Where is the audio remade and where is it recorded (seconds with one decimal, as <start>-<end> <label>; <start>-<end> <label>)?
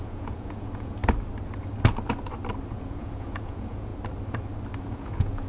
0.0-1.0 remade; 1.0-2.7 recorded; 2.7-3.9 remade; 3.9-4.8 recorded; 4.8-5.5 remade